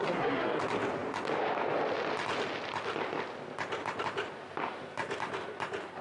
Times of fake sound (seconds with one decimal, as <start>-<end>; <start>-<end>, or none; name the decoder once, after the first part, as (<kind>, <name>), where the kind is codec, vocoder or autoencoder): 0.0-0.6 (codec, SNAC)